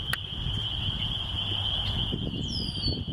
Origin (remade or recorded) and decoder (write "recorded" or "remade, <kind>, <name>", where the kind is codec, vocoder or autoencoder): recorded